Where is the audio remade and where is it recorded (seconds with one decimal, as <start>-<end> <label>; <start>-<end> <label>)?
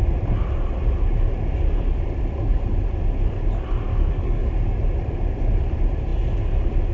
0.0-3.9 recorded; 3.9-4.5 remade; 4.5-6.9 recorded